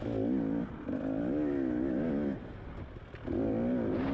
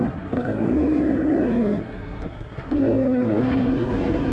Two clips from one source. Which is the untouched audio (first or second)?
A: first